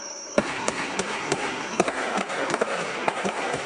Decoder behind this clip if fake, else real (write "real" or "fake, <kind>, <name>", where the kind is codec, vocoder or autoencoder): fake, codec, SNAC